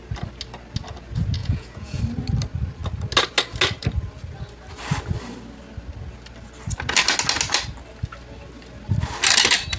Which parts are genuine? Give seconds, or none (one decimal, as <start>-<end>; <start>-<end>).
0.0-1.4; 2.0-9.8